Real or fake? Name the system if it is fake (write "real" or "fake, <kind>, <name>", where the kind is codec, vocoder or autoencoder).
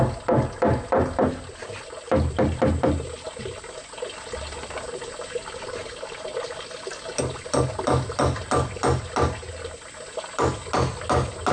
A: real